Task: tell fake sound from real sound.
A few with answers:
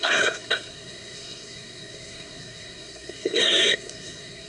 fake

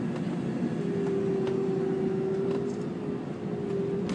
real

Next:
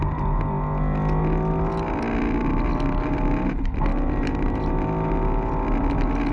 real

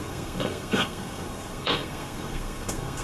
fake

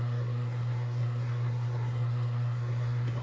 fake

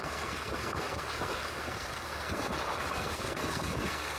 fake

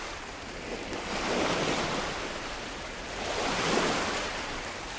real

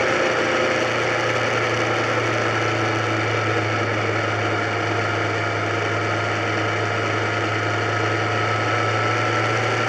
real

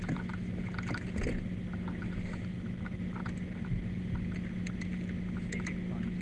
real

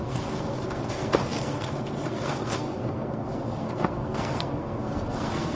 fake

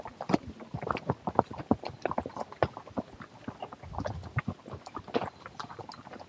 real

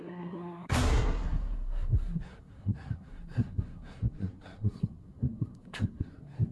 fake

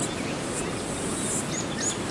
real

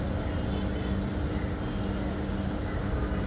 real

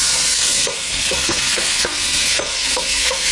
fake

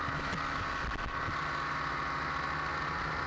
real